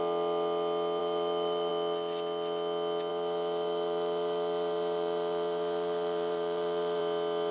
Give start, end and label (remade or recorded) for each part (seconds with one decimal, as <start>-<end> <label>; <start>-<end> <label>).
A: 0.0-1.0 recorded; 1.0-1.7 remade; 1.7-3.1 recorded; 3.1-7.0 remade; 7.0-7.5 recorded